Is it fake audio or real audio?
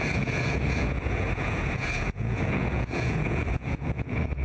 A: fake